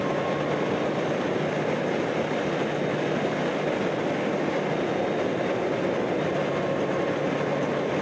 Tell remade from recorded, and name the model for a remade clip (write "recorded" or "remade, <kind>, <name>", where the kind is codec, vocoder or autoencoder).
recorded